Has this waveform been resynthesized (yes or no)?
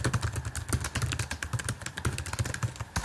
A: no